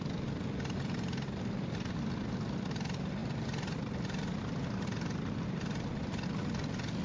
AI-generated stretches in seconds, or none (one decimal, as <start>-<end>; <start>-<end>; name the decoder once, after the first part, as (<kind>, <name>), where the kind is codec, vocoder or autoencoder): none